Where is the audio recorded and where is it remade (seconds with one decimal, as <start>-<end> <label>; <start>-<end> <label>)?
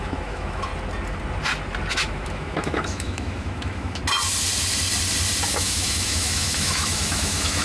0.0-0.7 remade; 0.7-1.9 recorded; 1.9-4.0 remade; 4.0-5.5 recorded; 5.5-7.6 remade